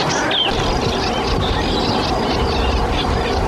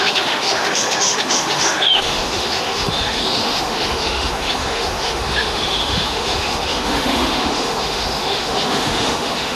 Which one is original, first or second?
first